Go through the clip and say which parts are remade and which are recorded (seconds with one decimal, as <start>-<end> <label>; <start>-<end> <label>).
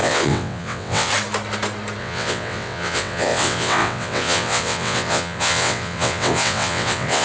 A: 0.0-1.1 remade; 1.1-2.0 recorded; 2.0-7.2 remade